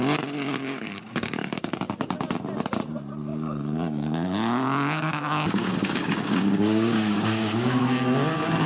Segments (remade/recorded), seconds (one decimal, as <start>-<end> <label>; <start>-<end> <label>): 0.0-0.6 recorded; 0.6-1.8 remade; 1.8-3.3 recorded; 3.3-7.8 remade; 7.8-8.7 recorded